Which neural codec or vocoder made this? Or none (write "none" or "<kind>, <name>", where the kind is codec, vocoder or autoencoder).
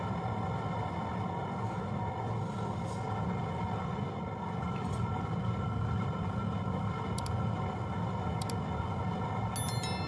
none